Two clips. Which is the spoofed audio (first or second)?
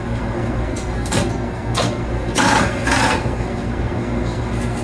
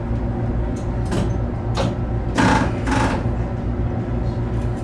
first